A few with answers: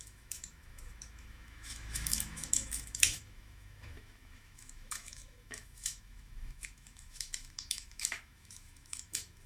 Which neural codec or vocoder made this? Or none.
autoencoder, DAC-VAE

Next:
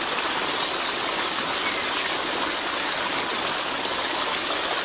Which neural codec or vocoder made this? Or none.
none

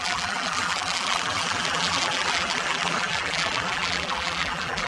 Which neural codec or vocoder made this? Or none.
vocoder, BigVGAN v2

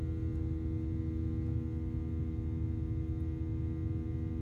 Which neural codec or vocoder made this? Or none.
none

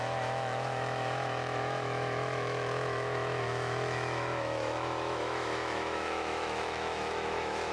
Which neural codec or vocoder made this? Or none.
autoencoder, DAC-VAE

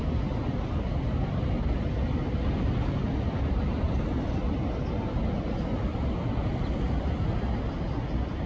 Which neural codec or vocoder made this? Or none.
none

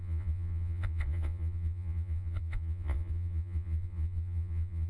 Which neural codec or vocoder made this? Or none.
vocoder, Vocos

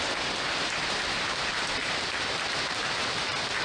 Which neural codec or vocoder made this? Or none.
vocoder, BigVGAN v2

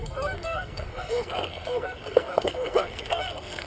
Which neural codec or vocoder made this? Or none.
codec, SNAC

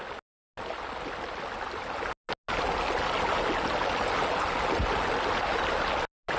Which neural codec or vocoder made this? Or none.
none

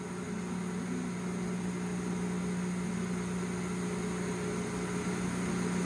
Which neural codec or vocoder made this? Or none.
none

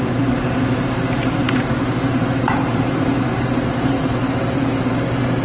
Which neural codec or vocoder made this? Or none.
vocoder, BigVGAN v2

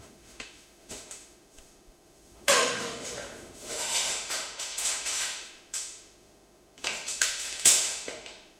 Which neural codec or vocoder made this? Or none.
autoencoder, DAC-VAE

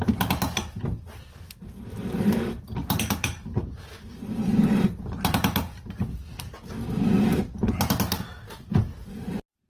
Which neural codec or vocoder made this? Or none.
none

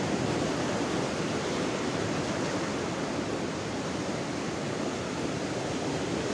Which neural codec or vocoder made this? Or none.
none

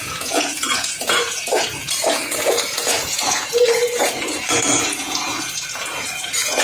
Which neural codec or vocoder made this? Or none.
vocoder, Vocos